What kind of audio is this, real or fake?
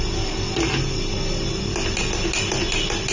real